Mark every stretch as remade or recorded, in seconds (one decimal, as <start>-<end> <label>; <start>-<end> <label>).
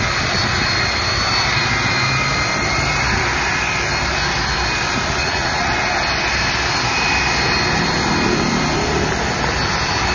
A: 0.0-5.2 recorded; 5.2-5.7 remade; 5.7-10.1 recorded